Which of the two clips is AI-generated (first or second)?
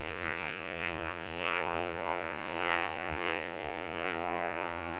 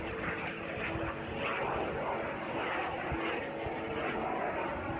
first